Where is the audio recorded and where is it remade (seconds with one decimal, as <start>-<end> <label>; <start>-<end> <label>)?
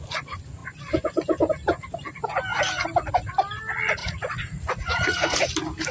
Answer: 0.0-4.0 recorded; 4.0-5.5 remade; 5.5-5.9 recorded